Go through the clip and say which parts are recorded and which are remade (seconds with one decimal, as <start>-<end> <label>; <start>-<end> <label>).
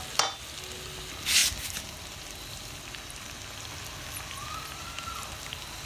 0.0-5.9 recorded